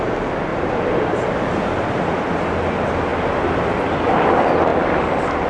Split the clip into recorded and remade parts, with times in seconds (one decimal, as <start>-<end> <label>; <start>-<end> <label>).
0.0-0.5 recorded; 0.5-1.0 remade; 1.0-4.7 recorded; 4.7-5.5 remade